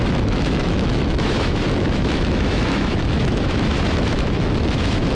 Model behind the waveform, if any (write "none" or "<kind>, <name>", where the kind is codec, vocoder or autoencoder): autoencoder, DAC-VAE